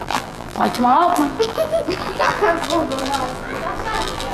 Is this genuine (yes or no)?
no